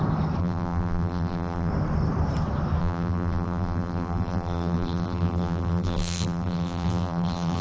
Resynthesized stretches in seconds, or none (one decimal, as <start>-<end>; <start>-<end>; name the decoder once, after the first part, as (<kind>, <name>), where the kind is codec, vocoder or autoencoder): 0.4-1.7 (vocoder, BigVGAN v2); 2.8-7.6